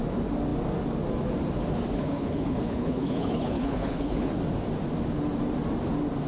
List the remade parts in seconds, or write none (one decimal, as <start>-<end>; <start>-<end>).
2.0-4.4